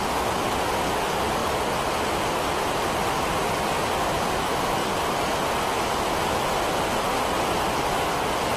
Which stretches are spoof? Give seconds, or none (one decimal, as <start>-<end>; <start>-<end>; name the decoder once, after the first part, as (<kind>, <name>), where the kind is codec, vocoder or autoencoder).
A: none